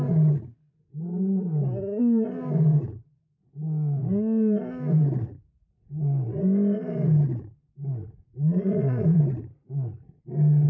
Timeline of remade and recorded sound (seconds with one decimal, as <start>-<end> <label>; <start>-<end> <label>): 0.0-8.3 recorded; 8.3-9.2 remade; 9.2-10.7 recorded